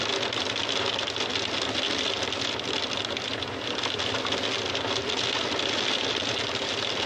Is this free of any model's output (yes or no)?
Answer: yes